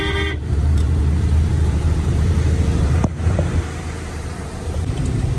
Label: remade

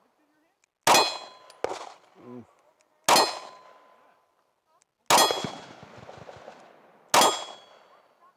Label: recorded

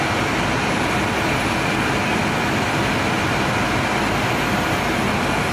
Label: recorded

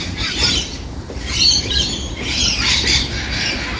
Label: remade